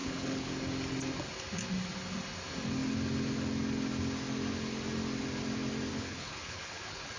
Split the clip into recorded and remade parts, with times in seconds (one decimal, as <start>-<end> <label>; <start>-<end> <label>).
0.0-0.5 remade; 0.5-5.9 recorded; 5.9-7.2 remade